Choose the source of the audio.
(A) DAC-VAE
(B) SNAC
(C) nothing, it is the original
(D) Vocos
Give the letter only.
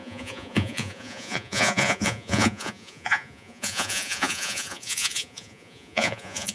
D